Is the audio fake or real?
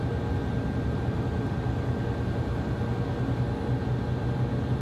real